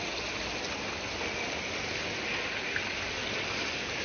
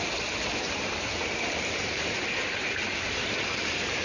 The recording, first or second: first